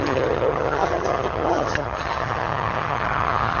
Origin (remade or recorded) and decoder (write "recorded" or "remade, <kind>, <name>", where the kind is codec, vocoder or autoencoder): remade, vocoder, HiFi-GAN